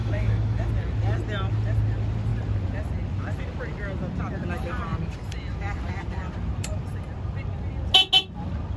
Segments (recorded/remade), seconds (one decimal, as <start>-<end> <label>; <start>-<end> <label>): 0.0-0.7 remade; 0.7-8.8 recorded